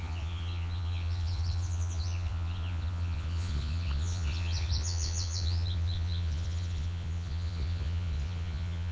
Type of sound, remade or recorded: remade